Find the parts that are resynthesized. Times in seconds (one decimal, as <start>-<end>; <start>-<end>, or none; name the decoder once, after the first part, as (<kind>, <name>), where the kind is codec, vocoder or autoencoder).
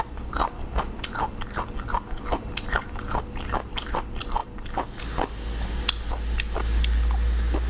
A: none